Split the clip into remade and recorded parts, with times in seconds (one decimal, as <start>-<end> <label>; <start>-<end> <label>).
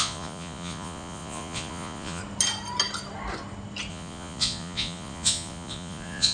0.0-2.2 remade; 2.2-3.9 recorded; 3.9-6.3 remade